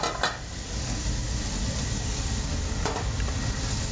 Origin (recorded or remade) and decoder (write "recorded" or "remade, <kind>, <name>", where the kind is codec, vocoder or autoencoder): recorded